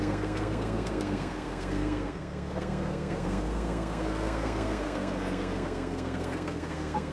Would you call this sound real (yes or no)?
no